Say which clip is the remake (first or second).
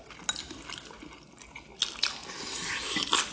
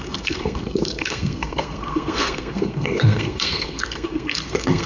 second